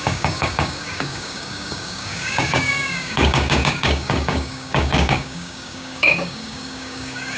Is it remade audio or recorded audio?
remade